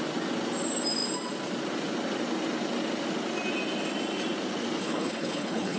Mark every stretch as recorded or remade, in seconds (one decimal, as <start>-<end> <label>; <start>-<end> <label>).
0.0-4.8 recorded; 4.8-5.8 remade